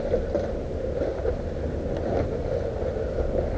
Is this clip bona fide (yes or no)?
yes